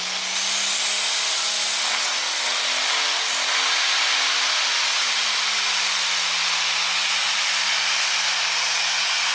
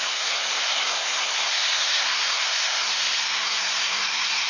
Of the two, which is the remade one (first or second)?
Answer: second